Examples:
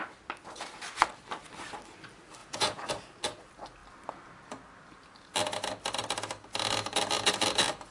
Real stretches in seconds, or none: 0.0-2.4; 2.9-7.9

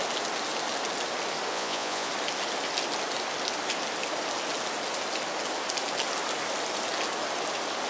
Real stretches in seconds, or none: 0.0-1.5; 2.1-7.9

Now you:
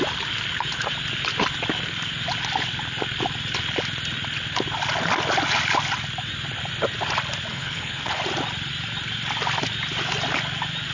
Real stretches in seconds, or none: 0.0-7.5; 8.2-10.9